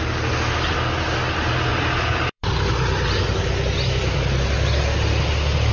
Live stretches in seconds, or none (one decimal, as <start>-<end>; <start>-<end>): 0.0-1.7; 3.4-5.7